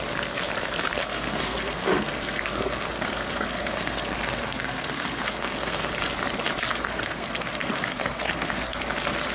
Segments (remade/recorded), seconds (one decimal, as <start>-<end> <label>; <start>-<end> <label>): 0.0-1.0 recorded; 1.0-5.9 remade; 5.9-6.7 recorded; 6.7-8.8 remade; 8.8-9.3 recorded